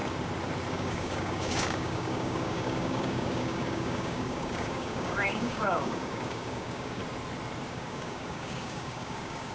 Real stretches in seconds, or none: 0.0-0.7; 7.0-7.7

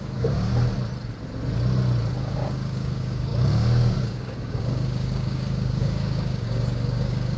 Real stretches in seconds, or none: 0.5-2.2